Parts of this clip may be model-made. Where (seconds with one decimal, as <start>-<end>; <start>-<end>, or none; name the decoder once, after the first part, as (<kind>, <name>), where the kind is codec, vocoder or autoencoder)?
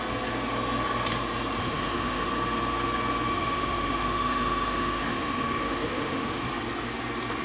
1.6-2.3 (autoencoder, DAC-VAE); 3.3-6.5